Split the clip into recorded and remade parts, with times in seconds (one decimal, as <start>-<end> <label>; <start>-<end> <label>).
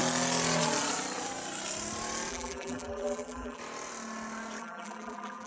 0.0-2.3 recorded; 2.3-3.6 remade; 3.6-4.6 recorded; 4.6-5.5 remade